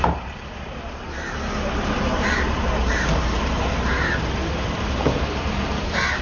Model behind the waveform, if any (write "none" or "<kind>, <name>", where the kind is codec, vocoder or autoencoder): vocoder, BigVGAN v2